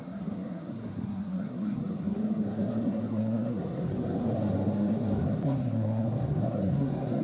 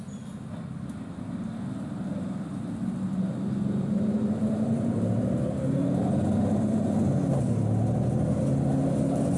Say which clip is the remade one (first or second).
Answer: first